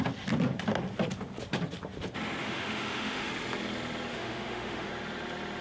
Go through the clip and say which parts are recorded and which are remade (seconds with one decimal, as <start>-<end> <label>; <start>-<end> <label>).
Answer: 0.0-2.4 recorded; 2.4-3.3 remade; 3.3-4.1 recorded; 4.1-4.9 remade; 4.9-5.6 recorded